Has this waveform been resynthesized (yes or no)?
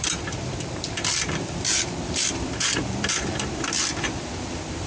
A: yes